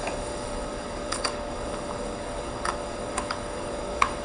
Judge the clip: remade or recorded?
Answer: remade